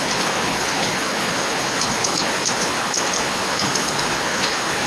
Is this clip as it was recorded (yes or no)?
no